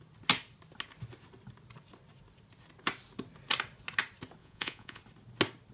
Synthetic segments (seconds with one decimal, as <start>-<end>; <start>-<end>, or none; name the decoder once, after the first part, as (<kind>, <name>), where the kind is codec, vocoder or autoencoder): 4.4-5.0 (vocoder, Vocos)